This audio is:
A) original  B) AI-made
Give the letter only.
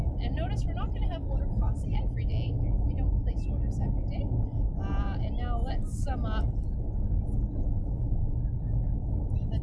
A